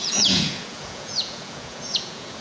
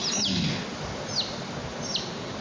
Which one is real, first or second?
second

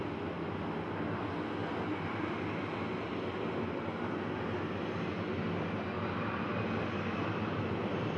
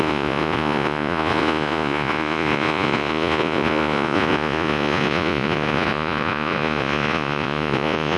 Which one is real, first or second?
first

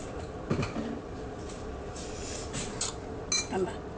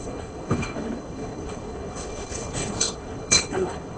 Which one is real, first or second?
first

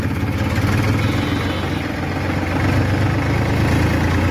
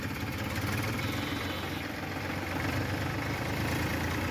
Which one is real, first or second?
first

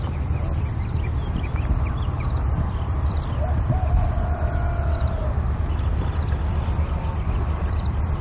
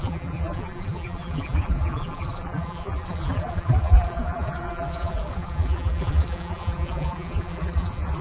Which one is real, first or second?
first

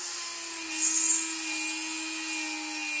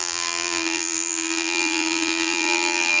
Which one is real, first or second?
first